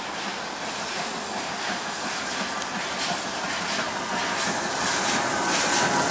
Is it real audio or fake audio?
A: real